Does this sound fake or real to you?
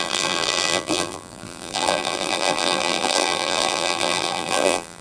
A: fake